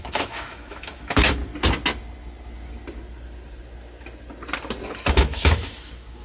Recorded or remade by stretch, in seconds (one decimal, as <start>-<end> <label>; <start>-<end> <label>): 0.0-1.4 remade; 1.4-5.1 recorded; 5.1-6.2 remade